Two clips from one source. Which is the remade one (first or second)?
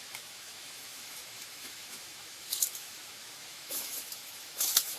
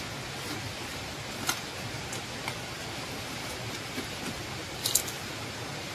first